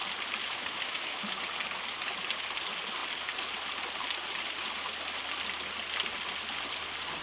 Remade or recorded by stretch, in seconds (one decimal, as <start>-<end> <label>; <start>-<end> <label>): 0.0-0.4 recorded; 0.4-1.4 remade; 1.4-7.2 recorded